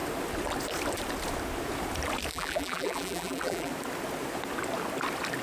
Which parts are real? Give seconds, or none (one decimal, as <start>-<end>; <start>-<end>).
0.0-2.3; 3.7-5.4